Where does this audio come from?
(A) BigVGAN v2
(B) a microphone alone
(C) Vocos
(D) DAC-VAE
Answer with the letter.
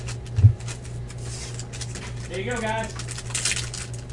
B